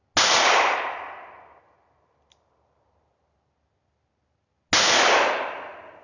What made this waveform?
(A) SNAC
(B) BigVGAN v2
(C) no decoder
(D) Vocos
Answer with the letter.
C